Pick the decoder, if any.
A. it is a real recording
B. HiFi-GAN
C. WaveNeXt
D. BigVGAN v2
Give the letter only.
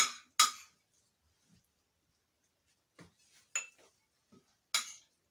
A